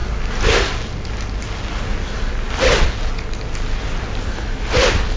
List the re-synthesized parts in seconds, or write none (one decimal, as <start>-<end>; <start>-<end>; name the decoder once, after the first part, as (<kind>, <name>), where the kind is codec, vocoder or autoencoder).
none